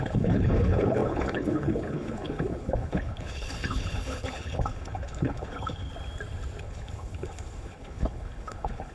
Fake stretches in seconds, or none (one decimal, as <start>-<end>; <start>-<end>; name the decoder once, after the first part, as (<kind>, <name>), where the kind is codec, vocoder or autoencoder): 0.0-5.9 (codec, HILCodec); 6.6-8.9